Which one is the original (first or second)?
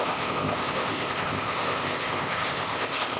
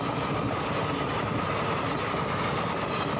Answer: second